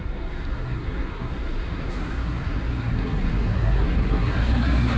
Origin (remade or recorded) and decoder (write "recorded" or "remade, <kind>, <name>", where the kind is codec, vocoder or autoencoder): remade, codec, SNAC